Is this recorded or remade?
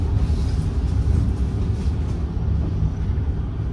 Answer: recorded